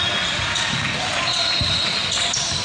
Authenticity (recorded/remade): recorded